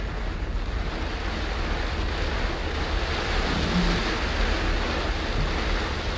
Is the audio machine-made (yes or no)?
no